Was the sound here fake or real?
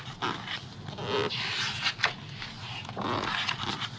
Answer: real